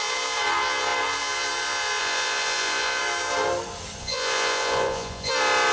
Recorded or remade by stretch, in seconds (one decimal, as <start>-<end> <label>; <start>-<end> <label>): 0.0-2.0 recorded; 2.0-3.0 remade; 3.0-4.0 recorded; 4.0-5.3 remade; 5.3-5.7 recorded